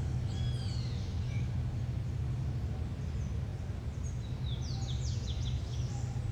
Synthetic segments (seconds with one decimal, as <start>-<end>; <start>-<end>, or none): none